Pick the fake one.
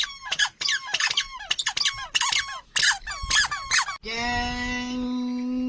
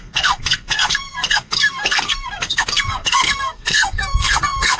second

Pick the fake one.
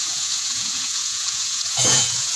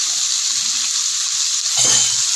first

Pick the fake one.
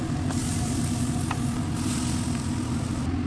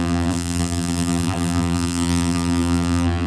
second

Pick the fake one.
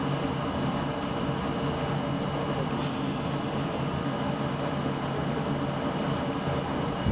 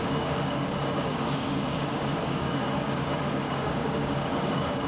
second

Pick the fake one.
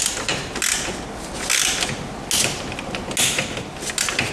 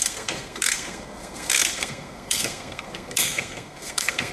second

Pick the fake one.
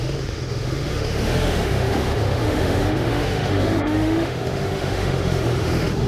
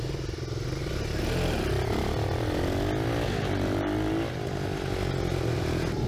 first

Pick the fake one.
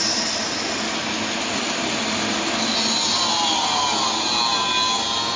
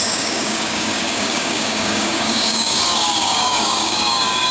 second